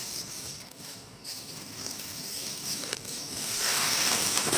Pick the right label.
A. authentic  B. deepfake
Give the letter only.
B